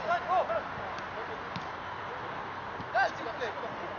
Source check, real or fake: real